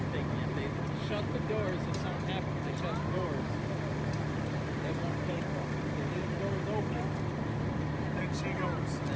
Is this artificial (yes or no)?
no